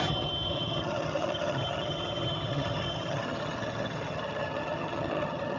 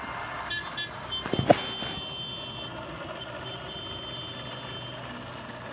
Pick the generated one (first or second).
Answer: first